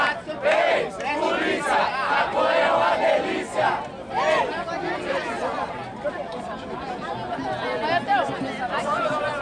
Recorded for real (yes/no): yes